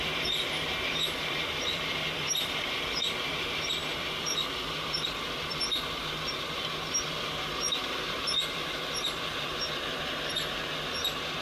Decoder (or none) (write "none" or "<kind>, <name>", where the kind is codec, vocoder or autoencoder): vocoder, BigVGAN v2